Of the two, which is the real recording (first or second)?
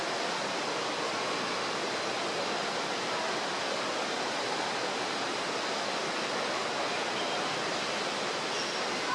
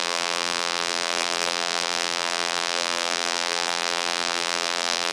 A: first